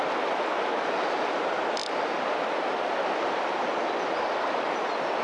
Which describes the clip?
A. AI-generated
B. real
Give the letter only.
B